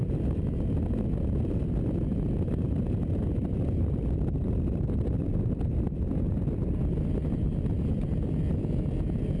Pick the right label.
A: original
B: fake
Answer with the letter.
A